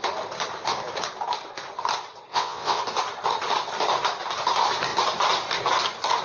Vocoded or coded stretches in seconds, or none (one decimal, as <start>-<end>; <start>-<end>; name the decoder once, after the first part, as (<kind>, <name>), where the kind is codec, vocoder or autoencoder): 2.3-2.8 (vocoder, WaveNeXt)